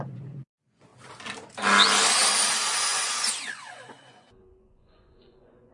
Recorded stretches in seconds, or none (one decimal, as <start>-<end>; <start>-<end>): 0.9-2.5